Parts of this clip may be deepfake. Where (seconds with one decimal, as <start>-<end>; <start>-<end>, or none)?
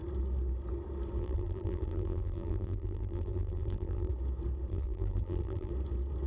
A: 1.2-4.1; 4.7-5.7